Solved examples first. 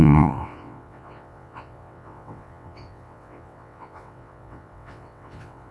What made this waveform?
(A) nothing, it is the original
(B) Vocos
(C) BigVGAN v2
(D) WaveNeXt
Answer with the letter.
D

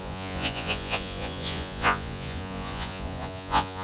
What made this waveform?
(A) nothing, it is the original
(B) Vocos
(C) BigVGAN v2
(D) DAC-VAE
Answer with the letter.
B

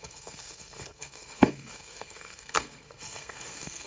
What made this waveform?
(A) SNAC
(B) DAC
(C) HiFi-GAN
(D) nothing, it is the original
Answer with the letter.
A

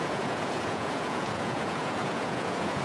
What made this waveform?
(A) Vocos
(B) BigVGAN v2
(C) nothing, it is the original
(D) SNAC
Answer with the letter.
A